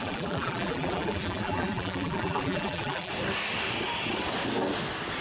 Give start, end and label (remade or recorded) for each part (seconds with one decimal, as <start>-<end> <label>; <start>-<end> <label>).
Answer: 0.0-3.1 remade; 3.1-5.2 recorded